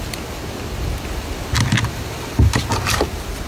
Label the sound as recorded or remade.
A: recorded